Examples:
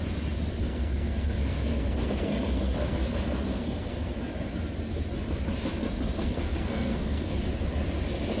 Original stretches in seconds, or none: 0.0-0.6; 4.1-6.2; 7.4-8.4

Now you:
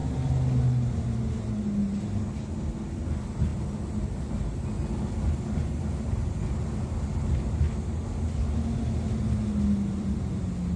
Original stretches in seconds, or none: 0.0-10.8

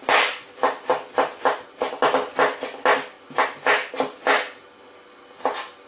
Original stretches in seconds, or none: 0.0-5.9

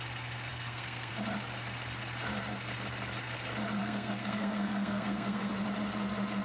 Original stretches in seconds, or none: 0.0-0.5; 1.1-3.8; 5.5-6.4